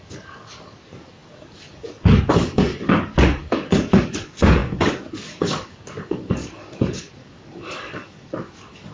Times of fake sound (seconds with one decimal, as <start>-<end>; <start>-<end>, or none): 0.0-8.9